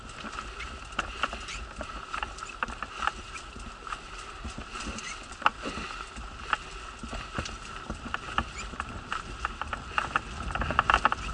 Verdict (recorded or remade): recorded